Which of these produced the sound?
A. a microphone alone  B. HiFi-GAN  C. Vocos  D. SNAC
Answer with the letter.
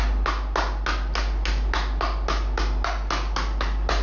A